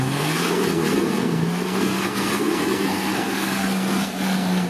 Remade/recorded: remade